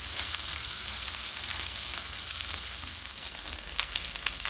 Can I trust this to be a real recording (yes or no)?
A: no